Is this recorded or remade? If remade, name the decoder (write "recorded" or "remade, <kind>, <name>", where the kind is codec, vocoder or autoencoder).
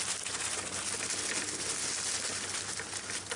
recorded